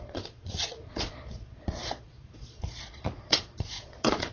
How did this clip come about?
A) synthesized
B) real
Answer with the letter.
A